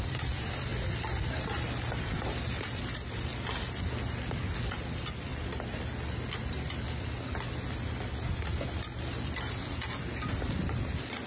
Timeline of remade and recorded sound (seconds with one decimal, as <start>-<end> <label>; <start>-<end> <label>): 0.0-0.7 remade; 0.7-1.3 recorded; 1.3-3.3 remade; 3.3-4.4 recorded; 4.4-5.3 remade; 5.3-7.7 recorded; 7.7-11.3 remade